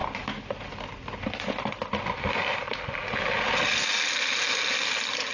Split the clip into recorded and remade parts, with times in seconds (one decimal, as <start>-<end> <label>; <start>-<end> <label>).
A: 0.0-5.3 recorded